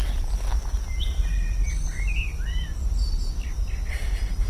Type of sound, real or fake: real